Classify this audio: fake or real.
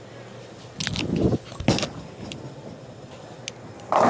real